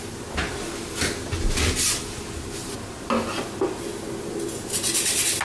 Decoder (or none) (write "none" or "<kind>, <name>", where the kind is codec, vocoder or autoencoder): none